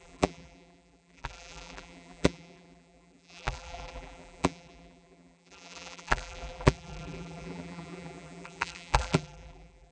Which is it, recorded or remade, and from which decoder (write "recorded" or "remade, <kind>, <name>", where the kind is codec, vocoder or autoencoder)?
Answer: remade, vocoder, BigVGAN v2